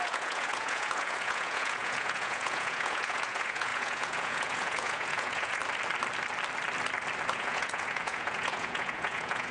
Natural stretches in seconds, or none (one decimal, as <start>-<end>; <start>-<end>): 5.6-7.3